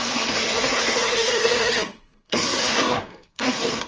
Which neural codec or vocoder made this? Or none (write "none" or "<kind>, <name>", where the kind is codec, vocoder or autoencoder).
codec, SNAC